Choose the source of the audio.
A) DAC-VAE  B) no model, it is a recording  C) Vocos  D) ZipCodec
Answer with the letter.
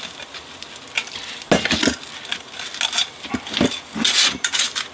B